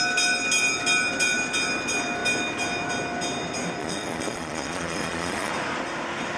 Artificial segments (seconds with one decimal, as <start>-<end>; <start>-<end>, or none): 3.8-5.5